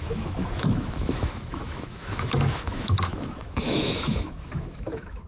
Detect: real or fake fake